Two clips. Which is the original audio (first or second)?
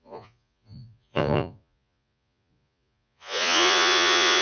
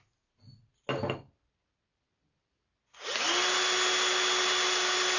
second